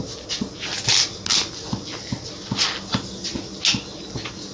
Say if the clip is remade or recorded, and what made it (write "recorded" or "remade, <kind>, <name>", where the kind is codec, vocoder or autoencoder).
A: recorded